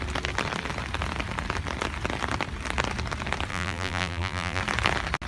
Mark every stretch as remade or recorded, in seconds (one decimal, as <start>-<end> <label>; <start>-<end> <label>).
0.0-3.5 recorded; 3.5-4.6 remade; 4.6-5.3 recorded